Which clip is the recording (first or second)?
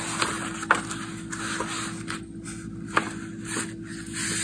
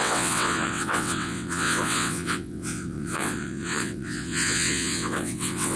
first